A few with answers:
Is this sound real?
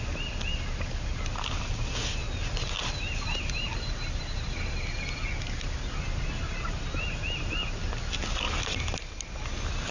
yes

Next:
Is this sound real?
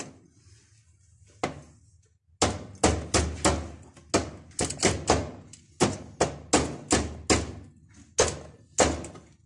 yes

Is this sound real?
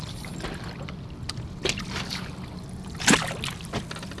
yes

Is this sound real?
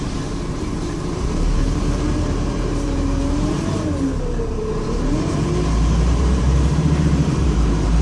no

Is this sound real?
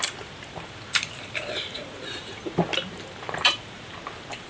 no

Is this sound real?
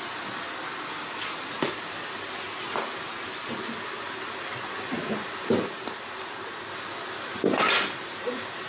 yes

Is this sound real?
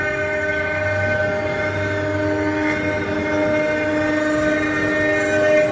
yes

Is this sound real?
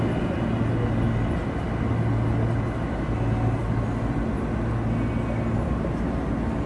yes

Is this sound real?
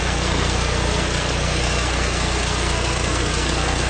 no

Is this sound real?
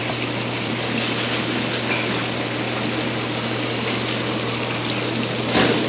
yes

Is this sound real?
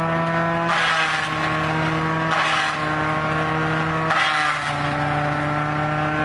yes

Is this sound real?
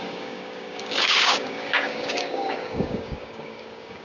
no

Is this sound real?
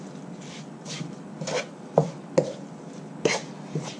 yes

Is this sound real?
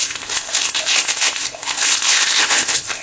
no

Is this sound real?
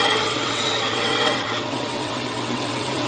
no